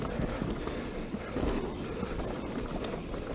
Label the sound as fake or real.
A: real